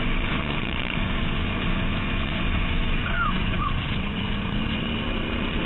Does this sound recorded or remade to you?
remade